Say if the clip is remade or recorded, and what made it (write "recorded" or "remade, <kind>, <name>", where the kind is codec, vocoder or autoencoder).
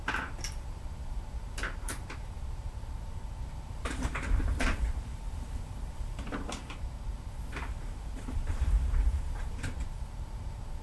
remade, vocoder, BigVGAN v2